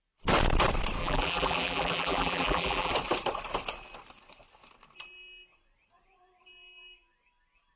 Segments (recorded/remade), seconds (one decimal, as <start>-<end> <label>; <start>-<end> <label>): 0.0-1.0 recorded; 1.0-2.9 remade; 2.9-7.8 recorded